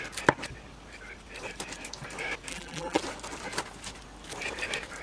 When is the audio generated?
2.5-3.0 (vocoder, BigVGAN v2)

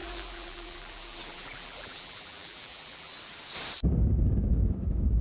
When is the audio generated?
0.0-3.1 (vocoder, BigVGAN v2)